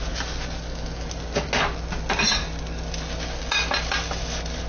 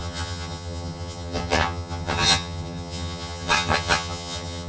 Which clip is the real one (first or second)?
first